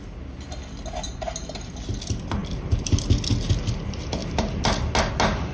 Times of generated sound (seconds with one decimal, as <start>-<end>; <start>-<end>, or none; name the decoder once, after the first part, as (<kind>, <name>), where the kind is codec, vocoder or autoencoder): none